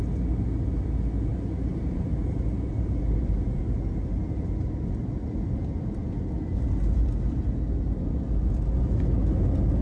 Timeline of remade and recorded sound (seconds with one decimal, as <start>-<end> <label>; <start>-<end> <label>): 0.0-1.3 recorded; 1.3-3.6 remade; 3.6-9.8 recorded